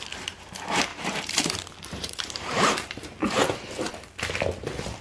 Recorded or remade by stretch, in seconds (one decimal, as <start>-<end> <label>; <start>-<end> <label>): 0.0-0.9 recorded; 0.9-3.9 remade; 3.9-5.0 recorded